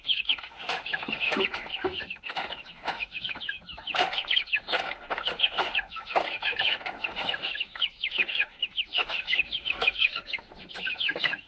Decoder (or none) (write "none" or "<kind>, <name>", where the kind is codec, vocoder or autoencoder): autoencoder, DAC-VAE